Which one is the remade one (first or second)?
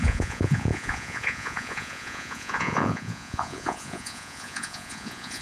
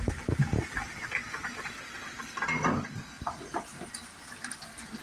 first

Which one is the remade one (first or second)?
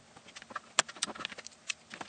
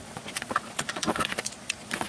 second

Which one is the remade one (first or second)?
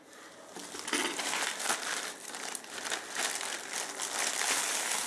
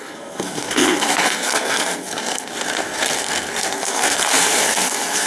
second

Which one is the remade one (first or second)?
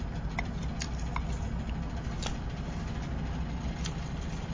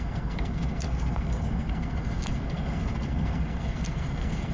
second